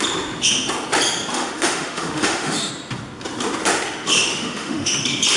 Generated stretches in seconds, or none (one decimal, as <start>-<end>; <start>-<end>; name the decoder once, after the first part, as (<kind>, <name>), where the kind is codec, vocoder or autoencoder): 1.3-2.7 (autoencoder, DAC-VAE); 4.3-5.0

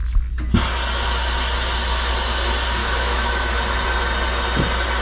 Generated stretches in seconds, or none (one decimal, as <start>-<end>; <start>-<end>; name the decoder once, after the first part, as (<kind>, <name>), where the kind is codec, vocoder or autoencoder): 2.8-3.6 (autoencoder, DAC-VAE)